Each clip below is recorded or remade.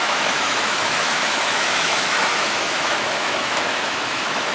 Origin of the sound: remade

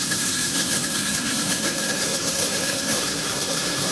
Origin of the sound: remade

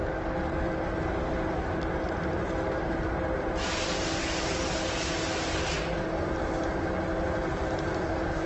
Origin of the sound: recorded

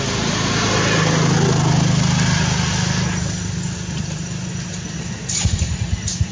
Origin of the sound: recorded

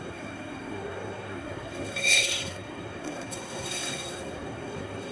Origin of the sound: remade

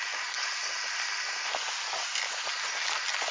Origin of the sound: recorded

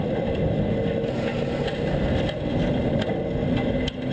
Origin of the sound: recorded